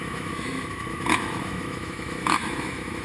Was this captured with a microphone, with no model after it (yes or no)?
no